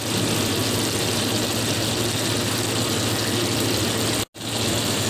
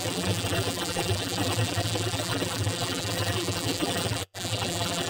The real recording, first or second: first